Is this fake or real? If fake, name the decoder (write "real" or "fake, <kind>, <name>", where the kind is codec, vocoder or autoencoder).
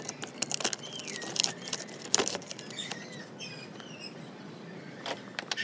fake, vocoder, BigVGAN v2